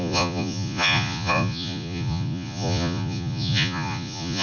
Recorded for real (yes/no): no